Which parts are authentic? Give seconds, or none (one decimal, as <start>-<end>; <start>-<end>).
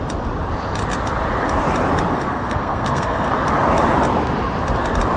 0.0-2.1; 3.3-5.2